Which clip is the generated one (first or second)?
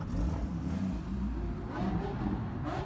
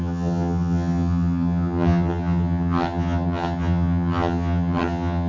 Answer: second